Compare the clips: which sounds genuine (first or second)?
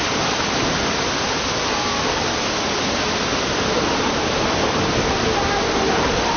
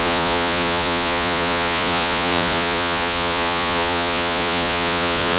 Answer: first